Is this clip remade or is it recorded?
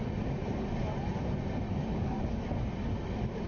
recorded